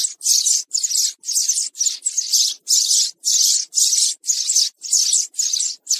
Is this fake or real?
real